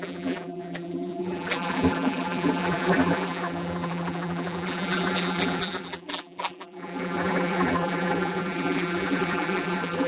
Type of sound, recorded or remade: remade